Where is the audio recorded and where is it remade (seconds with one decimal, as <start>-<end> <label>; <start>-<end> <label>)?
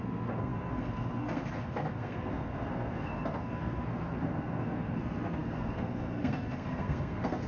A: 0.0-7.5 remade